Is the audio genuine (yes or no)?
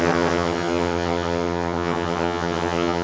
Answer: no